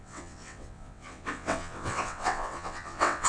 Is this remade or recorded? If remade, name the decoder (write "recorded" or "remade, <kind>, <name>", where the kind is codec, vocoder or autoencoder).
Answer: remade, vocoder, WaveNeXt